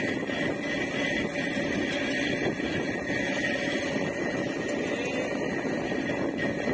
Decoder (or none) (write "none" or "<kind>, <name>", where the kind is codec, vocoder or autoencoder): none